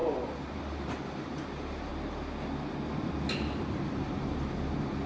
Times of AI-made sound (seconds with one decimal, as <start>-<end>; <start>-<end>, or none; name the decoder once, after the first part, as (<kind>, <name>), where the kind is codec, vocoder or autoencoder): 0.0-1.9 (vocoder, BigVGAN v2); 3.6-5.1